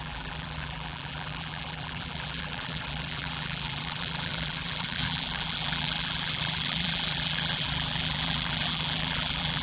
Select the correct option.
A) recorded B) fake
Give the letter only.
B